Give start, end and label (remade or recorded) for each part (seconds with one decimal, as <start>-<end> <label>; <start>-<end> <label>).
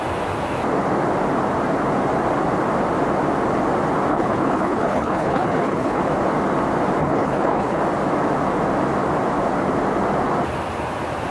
0.0-4.1 recorded; 4.1-6.0 remade; 6.0-7.0 recorded; 7.0-7.8 remade; 7.8-11.3 recorded